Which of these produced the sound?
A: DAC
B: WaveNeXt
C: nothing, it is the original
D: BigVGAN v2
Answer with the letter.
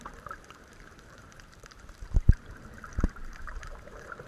D